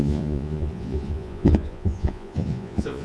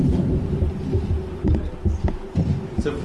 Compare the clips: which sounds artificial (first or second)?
first